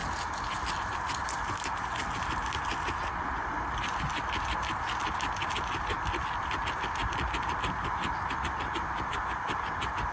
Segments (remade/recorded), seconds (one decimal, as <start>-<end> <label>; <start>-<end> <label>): 0.0-10.1 recorded